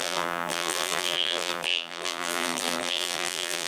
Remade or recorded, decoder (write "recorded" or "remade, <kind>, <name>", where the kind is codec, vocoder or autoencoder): remade, vocoder, BigVGAN v2